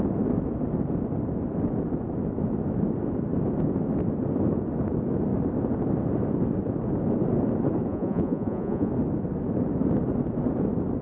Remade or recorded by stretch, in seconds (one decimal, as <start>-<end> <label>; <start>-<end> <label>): 0.0-7.9 recorded; 7.9-8.9 remade; 8.9-11.0 recorded